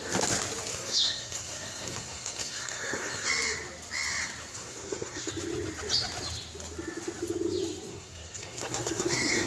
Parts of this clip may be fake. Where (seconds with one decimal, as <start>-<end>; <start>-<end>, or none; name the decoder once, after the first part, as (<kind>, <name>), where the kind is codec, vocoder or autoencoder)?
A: 0.7-3.3 (codec, SNAC); 4.5-5.3; 7.9-9.5